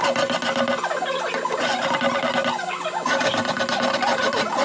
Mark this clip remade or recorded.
recorded